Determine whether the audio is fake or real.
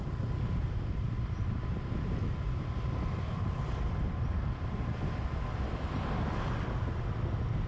real